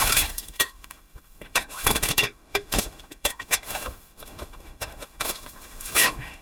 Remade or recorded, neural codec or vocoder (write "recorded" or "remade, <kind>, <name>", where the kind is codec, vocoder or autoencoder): remade, autoencoder, DAC-VAE